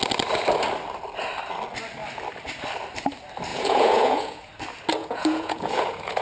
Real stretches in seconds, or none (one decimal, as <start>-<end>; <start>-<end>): 0.0-3.5; 4.5-5.0

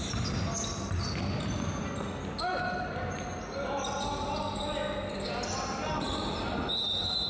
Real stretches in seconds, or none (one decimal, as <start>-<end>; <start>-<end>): 0.0-7.3

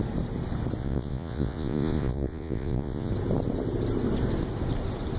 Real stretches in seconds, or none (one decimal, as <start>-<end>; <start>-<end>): 0.0-0.8; 3.1-5.2

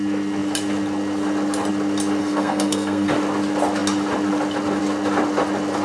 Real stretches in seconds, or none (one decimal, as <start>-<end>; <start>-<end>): 0.0-2.2; 3.1-5.8

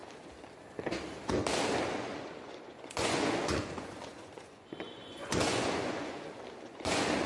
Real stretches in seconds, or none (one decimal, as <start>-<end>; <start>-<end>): 0.0-1.9

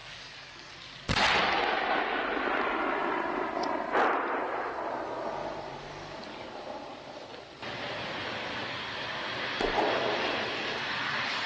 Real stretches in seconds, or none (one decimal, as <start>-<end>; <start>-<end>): 0.7-11.5

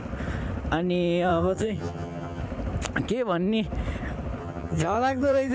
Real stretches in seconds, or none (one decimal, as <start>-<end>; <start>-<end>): 0.0-1.3; 2.4-4.4